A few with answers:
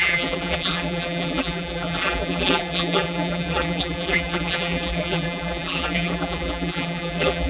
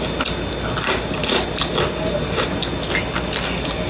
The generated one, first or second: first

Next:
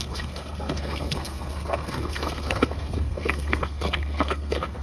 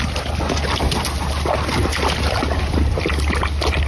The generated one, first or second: first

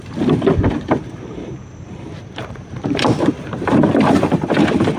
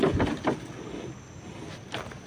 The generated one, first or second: first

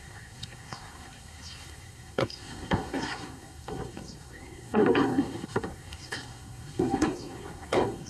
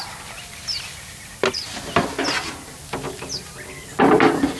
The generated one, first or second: first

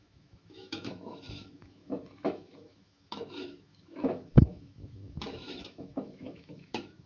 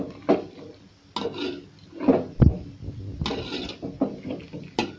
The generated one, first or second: first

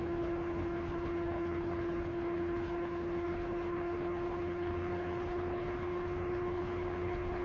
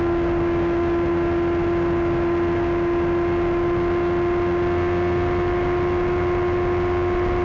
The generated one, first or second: first